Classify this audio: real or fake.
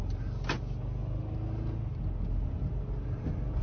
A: real